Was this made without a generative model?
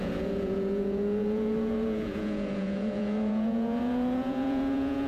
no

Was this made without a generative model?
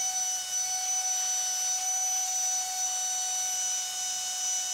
yes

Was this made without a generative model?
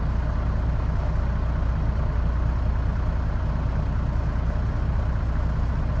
yes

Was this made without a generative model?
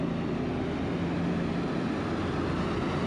yes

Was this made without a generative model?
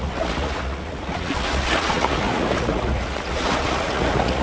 no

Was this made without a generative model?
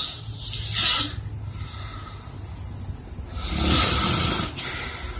yes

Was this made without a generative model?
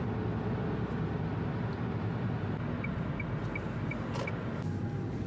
yes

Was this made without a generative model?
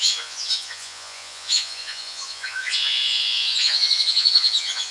no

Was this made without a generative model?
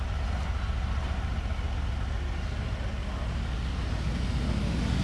yes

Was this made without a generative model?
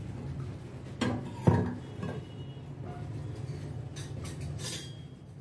yes